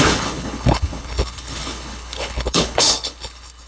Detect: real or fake fake